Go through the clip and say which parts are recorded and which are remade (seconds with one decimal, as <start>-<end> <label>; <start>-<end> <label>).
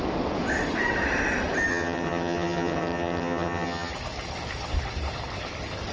0.0-1.7 recorded; 1.7-3.9 remade; 3.9-5.9 recorded